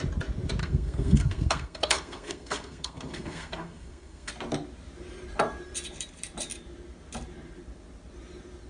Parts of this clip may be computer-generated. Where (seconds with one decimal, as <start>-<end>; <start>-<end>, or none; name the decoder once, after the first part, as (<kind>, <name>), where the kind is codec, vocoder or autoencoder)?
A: 0.6-4.3 (codec, SNAC)